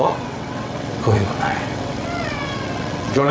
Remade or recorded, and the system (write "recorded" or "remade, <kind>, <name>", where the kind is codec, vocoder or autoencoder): remade, vocoder, WaveNeXt